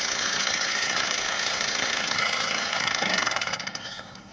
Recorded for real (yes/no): no